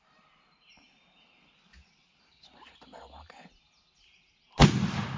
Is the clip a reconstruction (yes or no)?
no